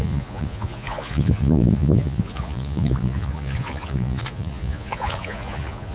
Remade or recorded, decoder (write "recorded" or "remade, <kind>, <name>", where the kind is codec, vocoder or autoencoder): remade, vocoder, Vocos